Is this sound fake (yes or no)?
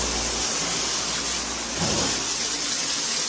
no